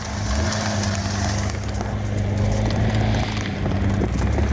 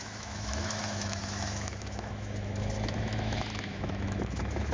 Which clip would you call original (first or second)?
first